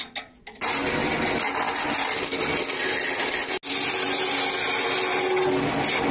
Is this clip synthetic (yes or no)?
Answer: no